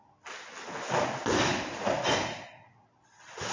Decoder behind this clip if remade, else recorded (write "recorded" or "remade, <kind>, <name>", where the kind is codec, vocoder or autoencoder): recorded